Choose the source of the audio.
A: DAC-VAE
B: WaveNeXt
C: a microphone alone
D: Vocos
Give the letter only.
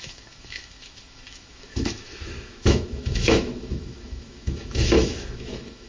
A